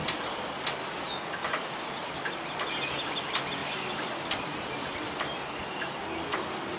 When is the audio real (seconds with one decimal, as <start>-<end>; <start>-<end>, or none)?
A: 0.0-1.4; 2.7-3.6; 4.8-6.8